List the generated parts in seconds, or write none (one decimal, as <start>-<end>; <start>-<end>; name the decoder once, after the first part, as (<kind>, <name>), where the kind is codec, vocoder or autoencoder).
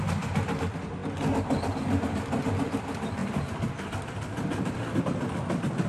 0.0-1.0 (vocoder, BigVGAN v2); 2.0-5.9